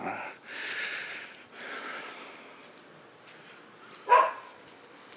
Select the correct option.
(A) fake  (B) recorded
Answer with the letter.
B